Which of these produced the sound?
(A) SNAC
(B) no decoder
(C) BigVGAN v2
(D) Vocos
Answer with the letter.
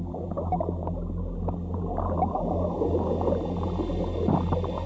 B